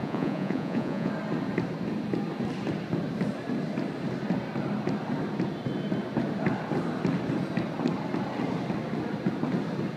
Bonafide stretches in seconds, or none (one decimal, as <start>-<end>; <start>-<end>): 1.1-10.0